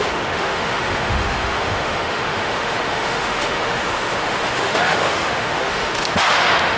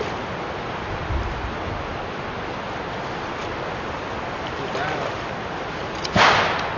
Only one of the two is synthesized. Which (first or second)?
first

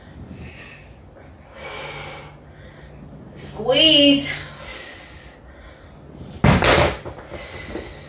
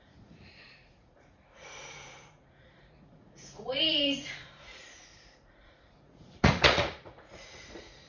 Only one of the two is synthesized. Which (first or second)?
second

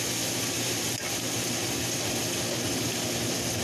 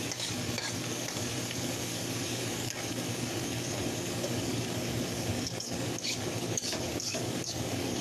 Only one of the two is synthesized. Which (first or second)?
second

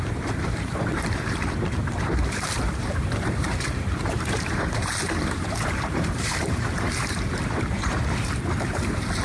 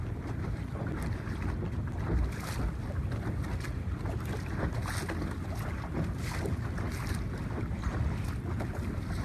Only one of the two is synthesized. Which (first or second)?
first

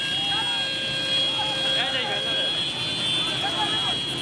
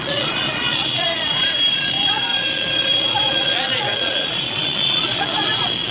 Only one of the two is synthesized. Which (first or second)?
second